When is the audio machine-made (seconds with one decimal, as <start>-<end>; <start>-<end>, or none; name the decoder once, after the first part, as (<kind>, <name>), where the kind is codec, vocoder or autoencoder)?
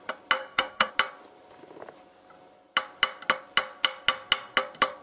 0.4-0.9 (codec, SNAC)